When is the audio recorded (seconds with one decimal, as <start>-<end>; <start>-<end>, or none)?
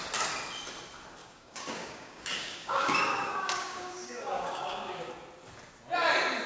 0.0-1.2; 5.1-6.5